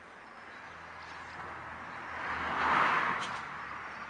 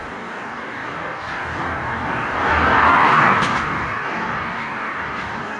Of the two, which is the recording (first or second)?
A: first